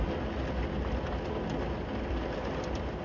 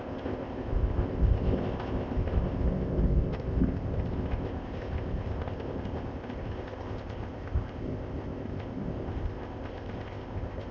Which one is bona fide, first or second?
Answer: first